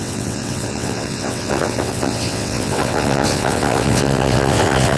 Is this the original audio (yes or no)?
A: no